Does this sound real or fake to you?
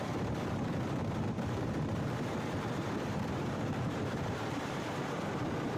fake